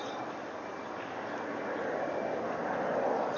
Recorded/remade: recorded